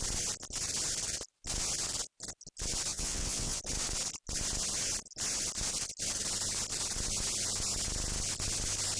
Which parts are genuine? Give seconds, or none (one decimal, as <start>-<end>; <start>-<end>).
0.0-2.9; 3.6-9.0